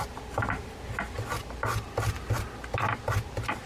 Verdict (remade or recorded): recorded